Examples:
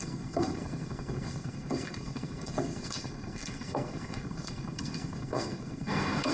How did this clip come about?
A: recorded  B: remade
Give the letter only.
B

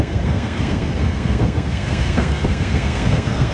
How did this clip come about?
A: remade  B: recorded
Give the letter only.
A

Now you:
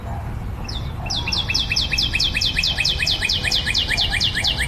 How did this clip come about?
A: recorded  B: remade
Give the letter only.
A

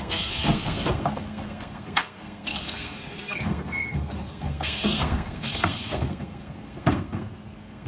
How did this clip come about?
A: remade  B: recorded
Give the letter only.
A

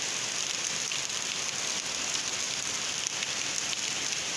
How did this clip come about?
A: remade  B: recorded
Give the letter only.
B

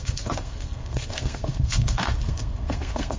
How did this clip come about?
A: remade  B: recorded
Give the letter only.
A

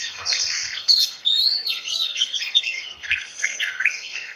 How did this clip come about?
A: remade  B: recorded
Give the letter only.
A